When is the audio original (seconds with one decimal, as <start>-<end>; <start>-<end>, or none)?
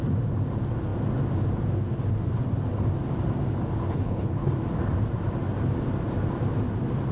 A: 0.0-3.9; 4.5-7.1